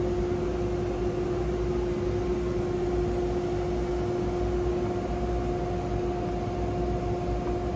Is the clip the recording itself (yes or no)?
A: yes